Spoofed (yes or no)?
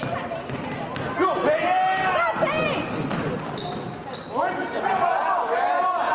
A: no